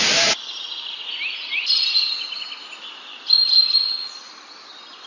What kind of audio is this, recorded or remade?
recorded